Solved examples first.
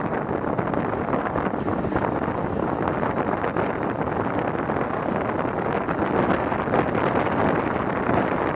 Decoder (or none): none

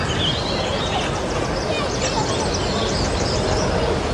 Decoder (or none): none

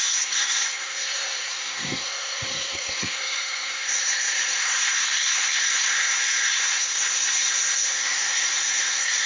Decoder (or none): codec, SNAC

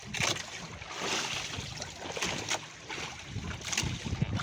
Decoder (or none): none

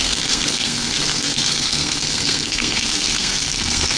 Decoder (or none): codec, SNAC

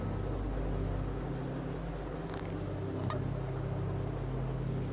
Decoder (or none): none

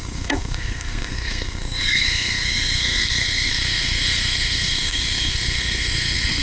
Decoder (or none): codec, SNAC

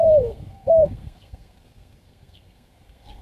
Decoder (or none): codec, SNAC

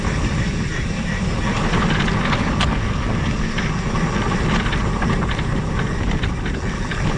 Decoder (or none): none